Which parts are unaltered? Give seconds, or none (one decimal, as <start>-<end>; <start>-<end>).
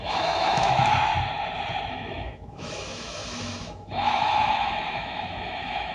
1.1-1.9